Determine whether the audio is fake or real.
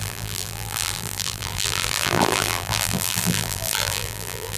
fake